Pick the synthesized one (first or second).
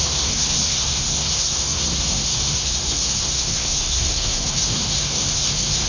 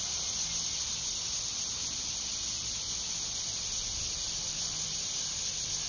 first